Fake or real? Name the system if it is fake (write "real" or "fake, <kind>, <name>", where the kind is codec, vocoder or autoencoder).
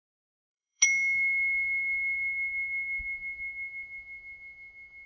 fake, autoencoder, DAC-VAE